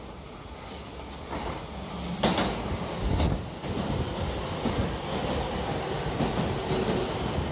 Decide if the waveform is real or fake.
real